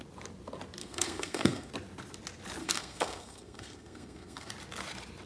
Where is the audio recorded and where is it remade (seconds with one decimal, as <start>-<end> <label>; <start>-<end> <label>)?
0.0-0.8 recorded; 0.8-1.7 remade; 1.7-2.6 recorded; 2.6-4.5 remade; 4.5-5.3 recorded